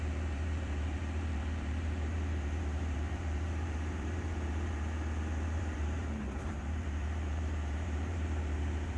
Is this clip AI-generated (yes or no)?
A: yes